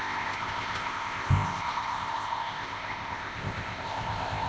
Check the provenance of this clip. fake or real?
fake